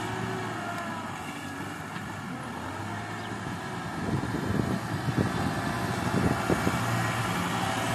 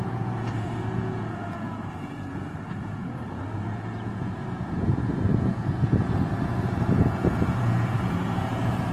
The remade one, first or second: second